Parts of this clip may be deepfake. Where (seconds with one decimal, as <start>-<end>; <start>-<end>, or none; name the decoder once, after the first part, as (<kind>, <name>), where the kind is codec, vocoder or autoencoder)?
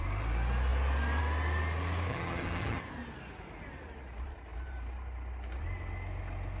2.1-2.8 (vocoder, HiFi-GAN)